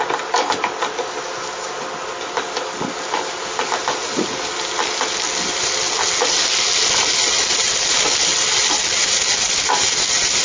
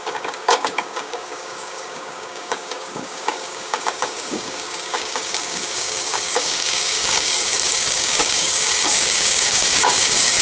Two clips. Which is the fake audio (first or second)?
second